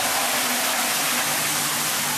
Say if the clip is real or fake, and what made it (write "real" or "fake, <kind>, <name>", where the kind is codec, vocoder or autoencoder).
real